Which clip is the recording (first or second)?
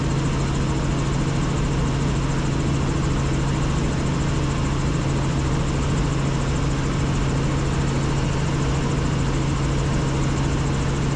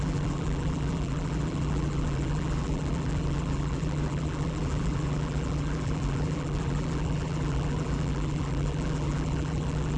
first